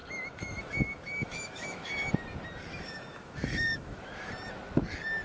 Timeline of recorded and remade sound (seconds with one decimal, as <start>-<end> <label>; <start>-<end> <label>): 0.0-2.1 remade; 2.1-2.7 recorded; 2.7-4.3 remade; 4.3-5.2 recorded